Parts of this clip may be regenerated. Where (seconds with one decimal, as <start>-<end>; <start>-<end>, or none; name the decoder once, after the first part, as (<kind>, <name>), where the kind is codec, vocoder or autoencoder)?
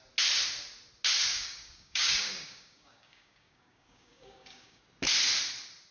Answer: 1.3-4.8 (codec, DAC)